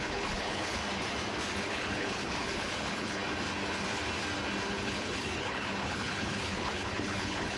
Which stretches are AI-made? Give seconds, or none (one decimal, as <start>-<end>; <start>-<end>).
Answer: 0.0-0.8; 1.6-3.2; 4.7-7.6